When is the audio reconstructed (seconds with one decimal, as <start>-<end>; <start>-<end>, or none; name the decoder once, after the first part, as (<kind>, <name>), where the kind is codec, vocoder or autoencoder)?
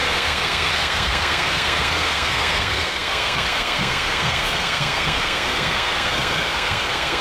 0.0-7.2 (codec, SNAC)